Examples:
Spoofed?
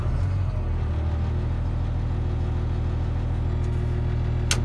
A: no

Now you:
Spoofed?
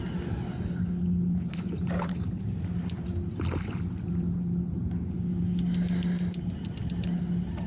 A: no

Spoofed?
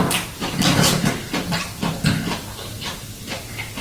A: yes